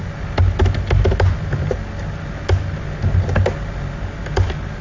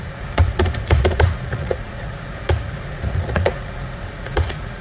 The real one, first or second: first